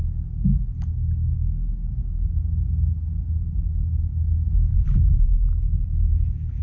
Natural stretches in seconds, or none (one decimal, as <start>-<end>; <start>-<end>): 0.0-6.6